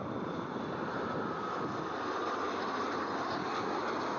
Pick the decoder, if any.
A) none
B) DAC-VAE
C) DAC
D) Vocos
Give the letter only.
A